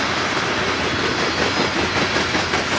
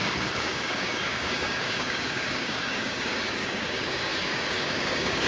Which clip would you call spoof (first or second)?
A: second